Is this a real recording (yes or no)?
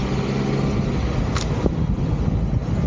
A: yes